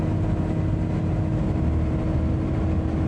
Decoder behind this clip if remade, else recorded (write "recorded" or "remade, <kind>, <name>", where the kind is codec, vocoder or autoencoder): recorded